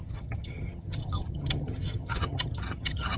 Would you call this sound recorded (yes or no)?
no